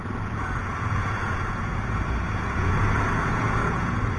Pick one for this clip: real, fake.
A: fake